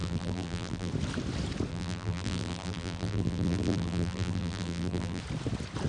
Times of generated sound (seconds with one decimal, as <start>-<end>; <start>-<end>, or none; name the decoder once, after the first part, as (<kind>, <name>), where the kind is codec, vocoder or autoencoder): 0.0-0.9 (vocoder, BigVGAN v2); 1.7-5.2